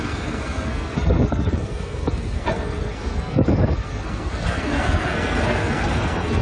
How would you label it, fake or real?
fake